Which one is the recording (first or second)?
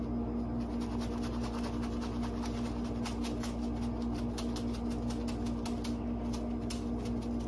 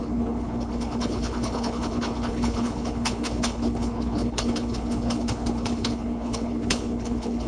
first